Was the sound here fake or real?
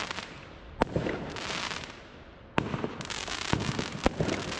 real